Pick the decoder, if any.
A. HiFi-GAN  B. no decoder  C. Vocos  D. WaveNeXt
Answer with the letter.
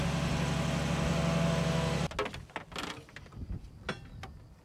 B